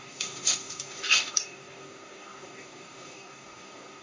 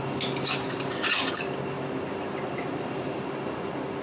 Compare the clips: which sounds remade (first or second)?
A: first